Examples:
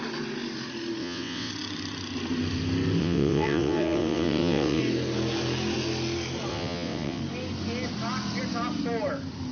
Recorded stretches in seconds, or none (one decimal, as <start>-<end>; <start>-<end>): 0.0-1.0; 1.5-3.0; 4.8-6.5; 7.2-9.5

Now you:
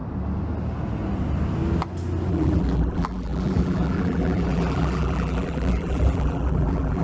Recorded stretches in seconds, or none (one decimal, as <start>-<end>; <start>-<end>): 0.0-2.3

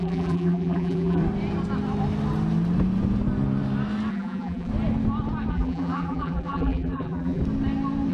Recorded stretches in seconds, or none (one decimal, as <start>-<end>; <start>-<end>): 1.2-4.1; 4.7-5.5; 7.4-8.1

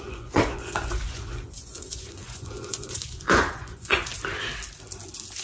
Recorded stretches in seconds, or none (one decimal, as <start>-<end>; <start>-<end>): 4.1-5.4

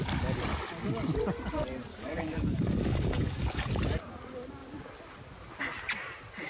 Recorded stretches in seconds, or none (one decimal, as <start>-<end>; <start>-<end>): 0.0-1.9; 3.7-6.5